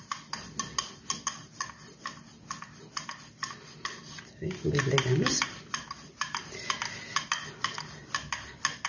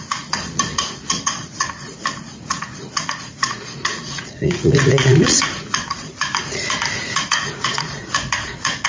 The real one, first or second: first